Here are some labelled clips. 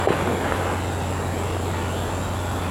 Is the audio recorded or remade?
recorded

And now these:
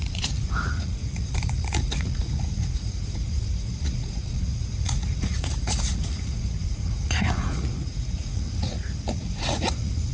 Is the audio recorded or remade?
remade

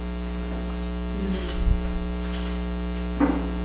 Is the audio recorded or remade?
recorded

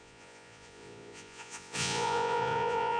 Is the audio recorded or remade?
remade